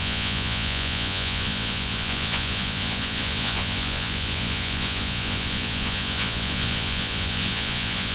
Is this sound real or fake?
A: fake